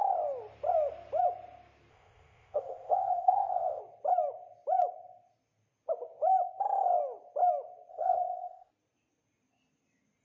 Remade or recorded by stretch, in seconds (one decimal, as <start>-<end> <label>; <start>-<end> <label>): 0.0-1.9 recorded; 1.9-3.8 remade; 3.8-7.9 recorded; 7.9-8.7 remade; 8.7-10.2 recorded